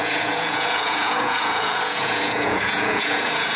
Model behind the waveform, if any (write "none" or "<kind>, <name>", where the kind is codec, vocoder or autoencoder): vocoder, Vocos